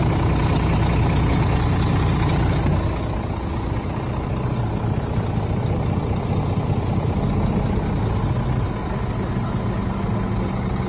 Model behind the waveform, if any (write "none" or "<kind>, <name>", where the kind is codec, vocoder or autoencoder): none